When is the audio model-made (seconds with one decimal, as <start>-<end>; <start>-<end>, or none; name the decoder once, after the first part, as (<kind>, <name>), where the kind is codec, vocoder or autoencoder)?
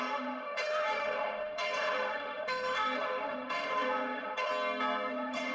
0.0-4.5 (autoencoder, DAC-VAE); 5.1-5.5